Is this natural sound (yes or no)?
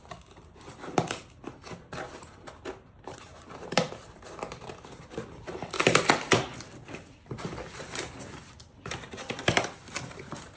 no